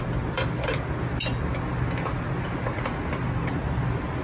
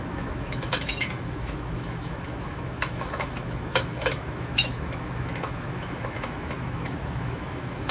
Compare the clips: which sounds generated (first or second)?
second